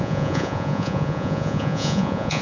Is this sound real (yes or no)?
no